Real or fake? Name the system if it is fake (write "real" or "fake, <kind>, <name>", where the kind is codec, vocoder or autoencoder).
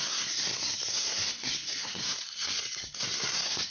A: fake, codec, SNAC